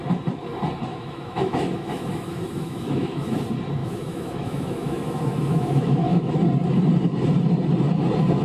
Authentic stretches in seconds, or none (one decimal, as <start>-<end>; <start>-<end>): 0.0-0.9; 3.4-3.8; 6.3-8.4